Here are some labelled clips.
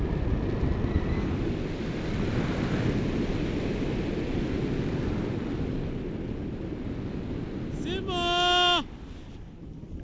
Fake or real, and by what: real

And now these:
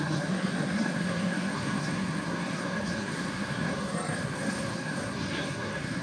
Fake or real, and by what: fake, codec, SNAC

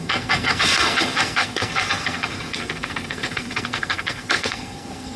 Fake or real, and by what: fake, codec, SNAC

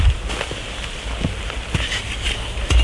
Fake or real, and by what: real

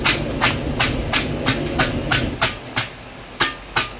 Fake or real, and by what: real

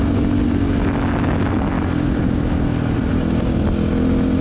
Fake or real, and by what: real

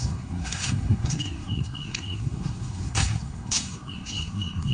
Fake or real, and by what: fake, codec, SNAC